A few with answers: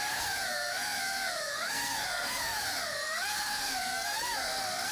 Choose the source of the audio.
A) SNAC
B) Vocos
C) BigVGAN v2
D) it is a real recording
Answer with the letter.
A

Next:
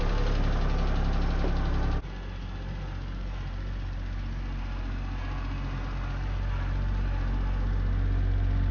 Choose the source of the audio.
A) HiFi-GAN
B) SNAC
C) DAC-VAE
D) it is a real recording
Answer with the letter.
D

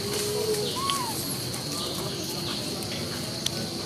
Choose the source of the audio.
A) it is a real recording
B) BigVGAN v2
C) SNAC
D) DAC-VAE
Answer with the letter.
A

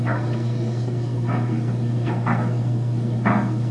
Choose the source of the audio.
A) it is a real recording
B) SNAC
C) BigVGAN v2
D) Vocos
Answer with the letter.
B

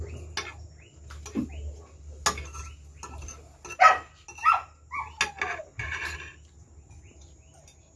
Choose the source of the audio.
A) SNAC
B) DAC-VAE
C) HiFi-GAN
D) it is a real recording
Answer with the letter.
D